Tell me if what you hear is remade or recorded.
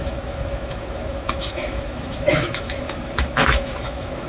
remade